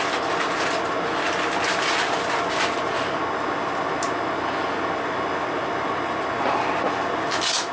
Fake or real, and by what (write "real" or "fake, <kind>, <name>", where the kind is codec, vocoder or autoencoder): real